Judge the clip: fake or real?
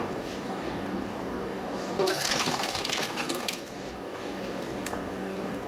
fake